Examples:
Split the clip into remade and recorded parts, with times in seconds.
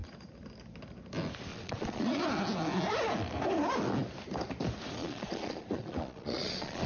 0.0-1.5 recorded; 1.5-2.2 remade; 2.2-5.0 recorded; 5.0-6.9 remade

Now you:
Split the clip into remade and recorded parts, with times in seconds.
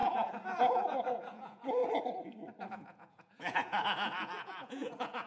0.0-1.8 remade; 1.8-2.7 recorded; 2.7-5.3 remade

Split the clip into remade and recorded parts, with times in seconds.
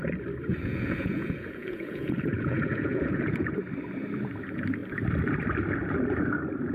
0.0-0.5 recorded; 0.5-3.5 remade; 3.5-6.7 recorded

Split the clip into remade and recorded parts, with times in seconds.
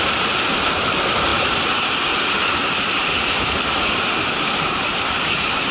0.0-5.7 recorded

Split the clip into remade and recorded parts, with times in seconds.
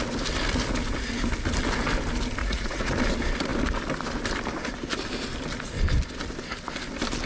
0.0-2.4 recorded; 2.4-2.9 remade; 2.9-7.3 recorded